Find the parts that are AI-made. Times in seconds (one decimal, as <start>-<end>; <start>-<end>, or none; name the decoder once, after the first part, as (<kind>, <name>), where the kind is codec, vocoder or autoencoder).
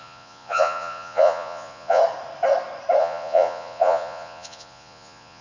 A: 0.0-2.0 (vocoder, Vocos); 3.0-5.4